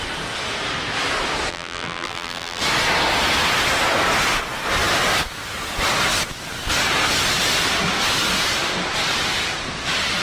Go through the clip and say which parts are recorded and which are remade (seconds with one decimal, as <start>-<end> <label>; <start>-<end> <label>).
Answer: 0.0-1.5 recorded; 1.5-2.6 remade; 2.6-10.2 recorded